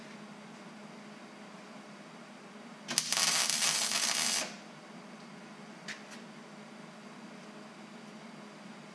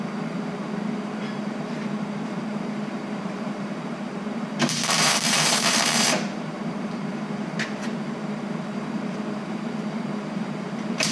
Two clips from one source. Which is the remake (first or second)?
second